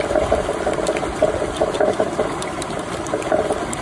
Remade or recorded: recorded